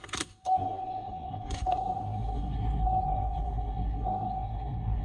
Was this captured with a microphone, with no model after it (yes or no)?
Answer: no